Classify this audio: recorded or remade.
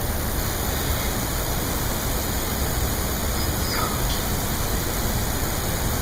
recorded